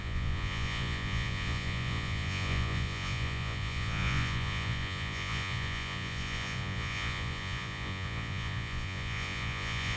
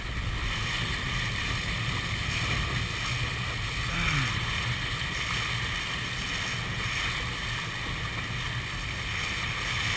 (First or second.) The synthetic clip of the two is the first